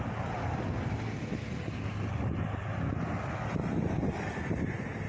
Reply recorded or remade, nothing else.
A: recorded